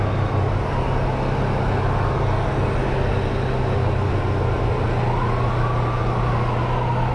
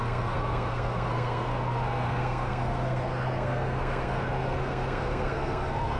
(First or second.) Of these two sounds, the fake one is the second